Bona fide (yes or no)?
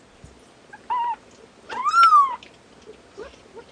yes